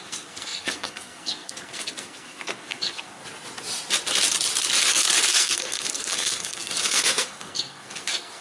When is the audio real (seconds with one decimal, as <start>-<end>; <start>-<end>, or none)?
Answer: 3.2-4.9